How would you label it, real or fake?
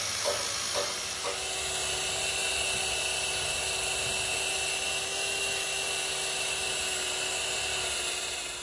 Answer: real